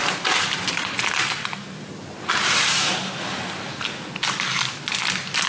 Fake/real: real